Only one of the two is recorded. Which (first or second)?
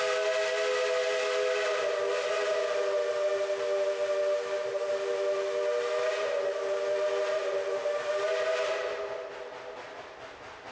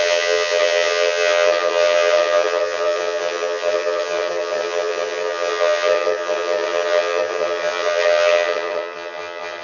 first